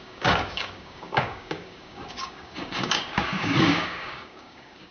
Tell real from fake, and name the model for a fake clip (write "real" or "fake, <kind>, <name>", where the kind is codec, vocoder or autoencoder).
fake, codec, DAC